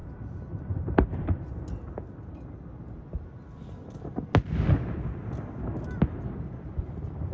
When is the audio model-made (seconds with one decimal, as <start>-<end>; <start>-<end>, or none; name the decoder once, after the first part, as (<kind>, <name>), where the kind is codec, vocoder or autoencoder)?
0.0-1.6 (vocoder, BigVGAN v2)